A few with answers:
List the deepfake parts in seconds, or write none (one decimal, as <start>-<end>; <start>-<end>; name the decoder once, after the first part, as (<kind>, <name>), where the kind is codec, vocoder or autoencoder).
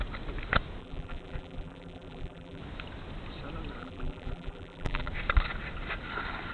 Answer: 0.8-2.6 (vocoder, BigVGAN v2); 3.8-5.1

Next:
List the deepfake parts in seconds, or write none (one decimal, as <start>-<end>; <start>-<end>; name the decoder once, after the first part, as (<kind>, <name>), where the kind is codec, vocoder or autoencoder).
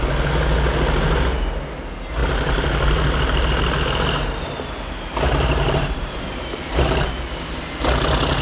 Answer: 2.2-7.1 (vocoder, BigVGAN v2)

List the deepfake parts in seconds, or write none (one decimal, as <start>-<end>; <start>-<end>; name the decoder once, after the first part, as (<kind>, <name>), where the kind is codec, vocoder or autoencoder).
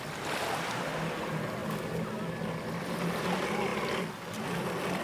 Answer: 0.0-1.6 (vocoder, BigVGAN v2); 2.8-3.7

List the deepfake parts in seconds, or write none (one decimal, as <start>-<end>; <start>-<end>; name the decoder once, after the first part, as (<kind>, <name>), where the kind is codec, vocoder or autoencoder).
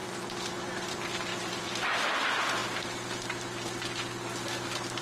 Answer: 1.3-2.2 (vocoder, BigVGAN v2)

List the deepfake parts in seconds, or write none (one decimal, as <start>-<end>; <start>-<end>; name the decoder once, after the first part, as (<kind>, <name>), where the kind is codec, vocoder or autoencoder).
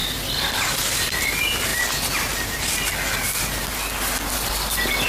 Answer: none